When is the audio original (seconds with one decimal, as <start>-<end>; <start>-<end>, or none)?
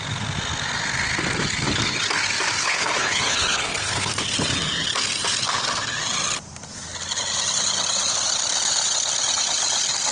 0.0-2.6; 4.1-10.1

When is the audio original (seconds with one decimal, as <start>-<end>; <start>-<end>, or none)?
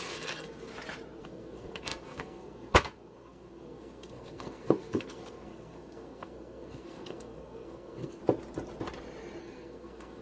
0.7-1.2; 8.2-9.4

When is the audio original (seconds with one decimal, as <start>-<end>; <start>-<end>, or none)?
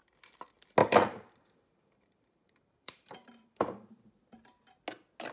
0.0-0.8; 4.0-5.3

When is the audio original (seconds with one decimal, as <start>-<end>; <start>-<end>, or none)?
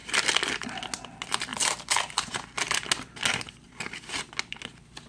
0.7-5.1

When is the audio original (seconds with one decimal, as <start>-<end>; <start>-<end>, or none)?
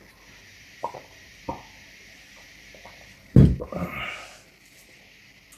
0.0-0.5; 3.9-5.6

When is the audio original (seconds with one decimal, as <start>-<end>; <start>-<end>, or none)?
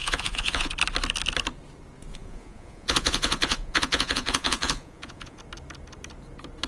0.7-2.1; 5.4-6.7